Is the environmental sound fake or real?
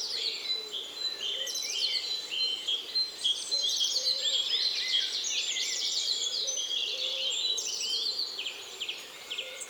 fake